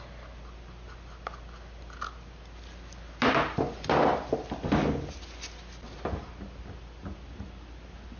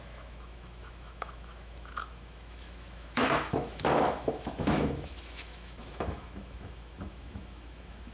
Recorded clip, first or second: first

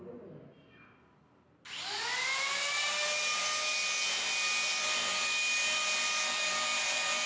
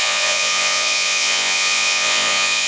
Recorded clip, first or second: first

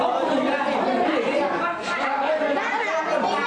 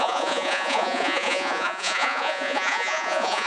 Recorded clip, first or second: first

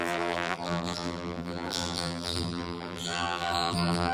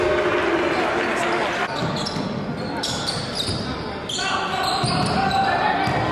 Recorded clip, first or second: second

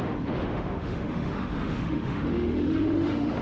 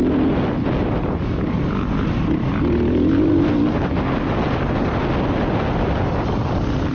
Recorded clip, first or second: second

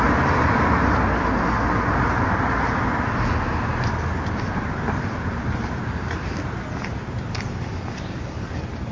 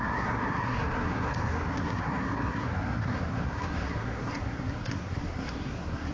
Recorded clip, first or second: first